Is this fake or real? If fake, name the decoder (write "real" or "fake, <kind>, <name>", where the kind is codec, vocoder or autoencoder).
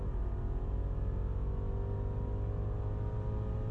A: real